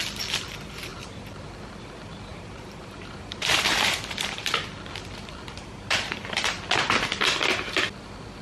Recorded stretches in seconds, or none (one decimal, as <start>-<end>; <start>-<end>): 0.0-0.9; 1.5-2.3; 4.5-5.6; 6.4-8.4